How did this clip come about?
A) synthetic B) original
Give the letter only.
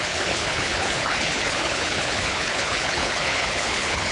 A